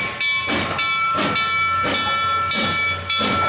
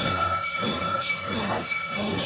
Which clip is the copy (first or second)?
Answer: second